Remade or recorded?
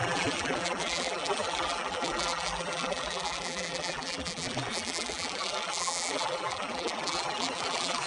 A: remade